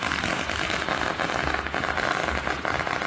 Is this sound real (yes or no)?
yes